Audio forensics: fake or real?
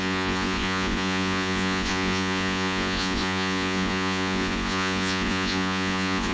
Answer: fake